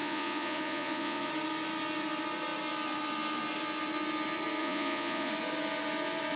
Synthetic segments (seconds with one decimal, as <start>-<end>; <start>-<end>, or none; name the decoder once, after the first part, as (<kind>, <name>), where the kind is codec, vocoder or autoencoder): 0.0-1.3 (vocoder, Vocos); 4.6-5.3